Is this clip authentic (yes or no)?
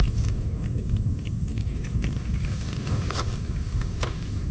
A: no